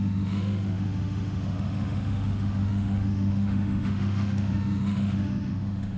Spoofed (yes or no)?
yes